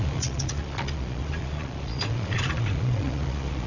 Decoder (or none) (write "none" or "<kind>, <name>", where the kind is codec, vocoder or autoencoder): vocoder, Vocos